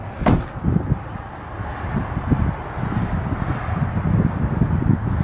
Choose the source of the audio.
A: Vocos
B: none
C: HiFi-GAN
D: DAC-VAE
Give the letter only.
B